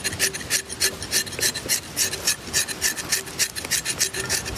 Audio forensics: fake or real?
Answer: real